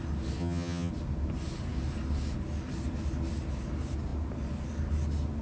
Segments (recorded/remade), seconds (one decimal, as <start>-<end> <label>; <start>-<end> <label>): 0.0-0.4 recorded; 0.4-0.9 remade; 0.9-5.4 recorded